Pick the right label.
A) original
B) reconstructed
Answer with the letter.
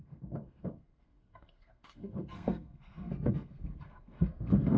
B